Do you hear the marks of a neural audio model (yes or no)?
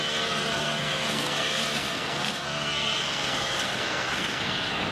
yes